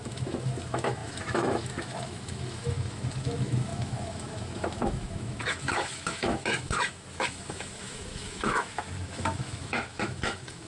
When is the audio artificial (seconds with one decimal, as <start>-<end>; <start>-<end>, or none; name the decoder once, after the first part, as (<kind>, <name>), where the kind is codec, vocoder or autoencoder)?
0.0-10.7 (autoencoder, DAC-VAE)